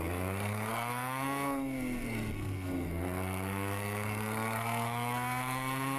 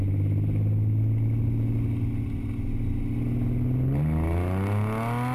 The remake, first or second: first